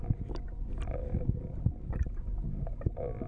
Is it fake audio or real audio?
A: real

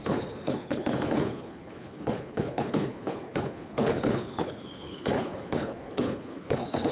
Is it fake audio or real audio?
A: fake